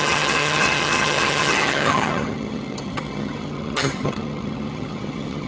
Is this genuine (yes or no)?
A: no